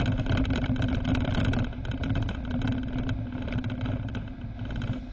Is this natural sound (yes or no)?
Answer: yes